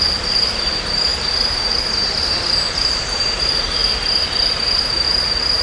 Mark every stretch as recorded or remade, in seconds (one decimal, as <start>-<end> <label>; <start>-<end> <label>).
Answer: 0.0-3.8 remade; 3.8-4.5 recorded; 4.5-5.6 remade